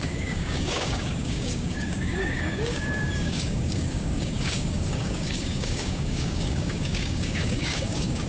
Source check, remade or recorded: remade